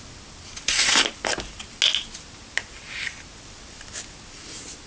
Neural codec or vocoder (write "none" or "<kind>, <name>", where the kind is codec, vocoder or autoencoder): none